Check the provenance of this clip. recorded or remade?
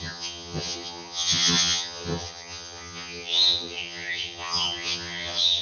remade